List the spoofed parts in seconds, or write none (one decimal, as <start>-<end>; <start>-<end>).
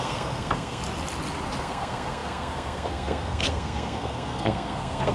0.0-0.8; 1.6-5.1